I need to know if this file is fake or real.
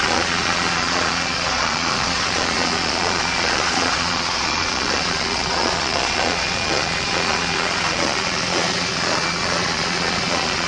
fake